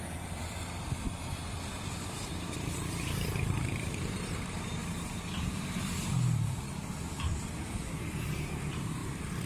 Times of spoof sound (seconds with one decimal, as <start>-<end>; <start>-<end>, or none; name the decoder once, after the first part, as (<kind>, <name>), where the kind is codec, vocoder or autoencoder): 0.0-0.4 (vocoder, BigVGAN v2); 1.2-9.5